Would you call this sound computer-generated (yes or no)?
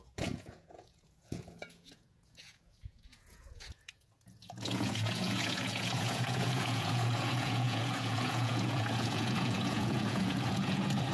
yes